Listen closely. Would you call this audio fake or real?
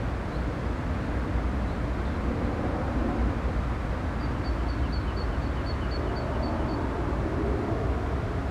real